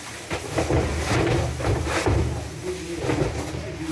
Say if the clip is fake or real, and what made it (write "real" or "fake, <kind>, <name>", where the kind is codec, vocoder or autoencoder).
real